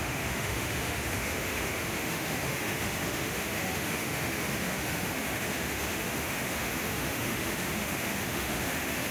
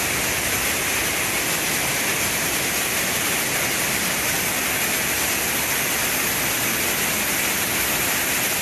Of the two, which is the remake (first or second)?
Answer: first